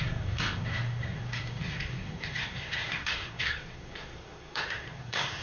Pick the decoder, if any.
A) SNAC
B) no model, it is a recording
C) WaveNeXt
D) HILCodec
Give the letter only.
A